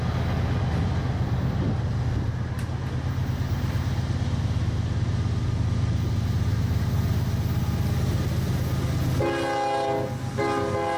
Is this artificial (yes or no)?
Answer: no